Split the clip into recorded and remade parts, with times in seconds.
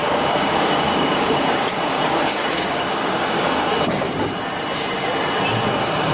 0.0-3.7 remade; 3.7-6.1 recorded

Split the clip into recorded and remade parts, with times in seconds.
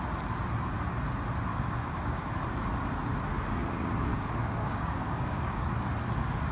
0.0-1.5 recorded; 1.5-2.3 remade; 2.3-4.1 recorded; 4.1-5.7 remade; 5.7-6.5 recorded